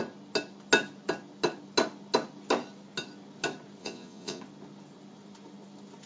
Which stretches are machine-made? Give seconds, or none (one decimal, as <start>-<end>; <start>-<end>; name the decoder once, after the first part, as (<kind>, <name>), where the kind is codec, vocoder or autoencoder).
3.8-4.4 (vocoder, Vocos)